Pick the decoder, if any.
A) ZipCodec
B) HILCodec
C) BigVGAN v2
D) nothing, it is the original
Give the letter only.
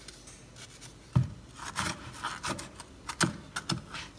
D